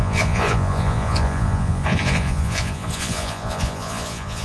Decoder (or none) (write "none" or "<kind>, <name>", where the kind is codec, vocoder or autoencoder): vocoder, Vocos